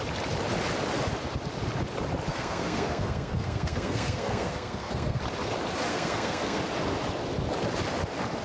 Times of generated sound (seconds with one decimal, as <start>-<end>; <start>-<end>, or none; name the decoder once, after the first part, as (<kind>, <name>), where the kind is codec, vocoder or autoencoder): 2.3-5.2 (codec, SNAC); 5.9-6.6